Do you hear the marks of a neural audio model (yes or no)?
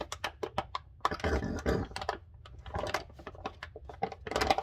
no